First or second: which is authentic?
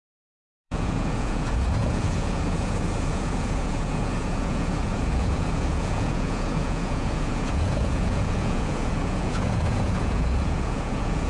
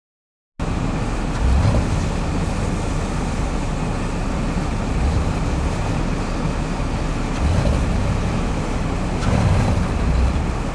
second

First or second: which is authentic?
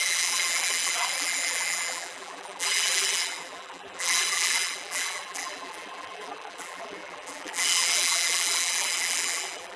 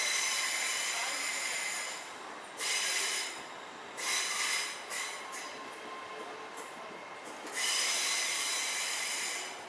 second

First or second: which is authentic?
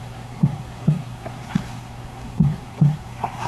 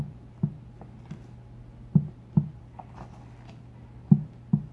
second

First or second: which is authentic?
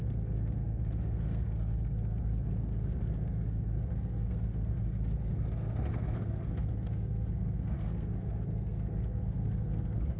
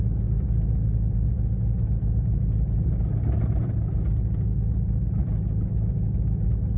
second